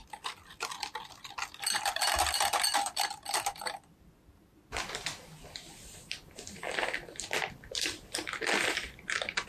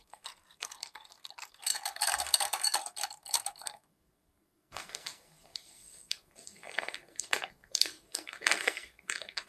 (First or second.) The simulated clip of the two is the second